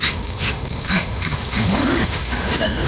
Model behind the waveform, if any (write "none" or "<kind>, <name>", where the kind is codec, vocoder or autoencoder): autoencoder, DAC-VAE